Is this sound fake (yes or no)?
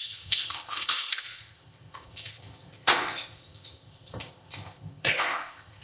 yes